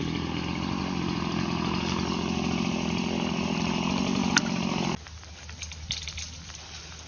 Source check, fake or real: real